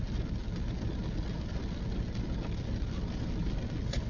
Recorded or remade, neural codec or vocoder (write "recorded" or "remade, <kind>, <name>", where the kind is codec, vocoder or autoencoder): recorded